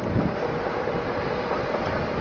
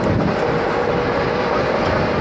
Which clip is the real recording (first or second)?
second